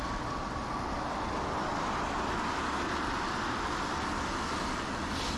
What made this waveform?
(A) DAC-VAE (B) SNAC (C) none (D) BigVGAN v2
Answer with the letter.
C